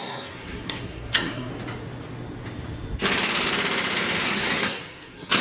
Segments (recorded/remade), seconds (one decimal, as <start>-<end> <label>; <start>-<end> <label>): 0.0-1.5 remade; 1.5-4.2 recorded; 4.2-5.4 remade